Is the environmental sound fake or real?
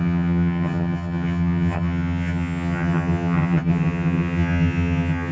fake